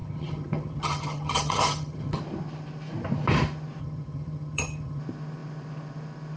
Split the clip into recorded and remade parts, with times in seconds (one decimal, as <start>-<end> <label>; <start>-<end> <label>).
0.0-2.2 remade; 2.2-3.8 recorded; 3.8-5.0 remade; 5.0-6.4 recorded